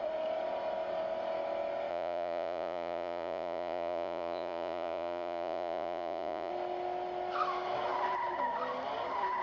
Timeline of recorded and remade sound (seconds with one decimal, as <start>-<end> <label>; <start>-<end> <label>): 0.0-1.9 recorded; 1.9-6.5 remade; 6.5-9.4 recorded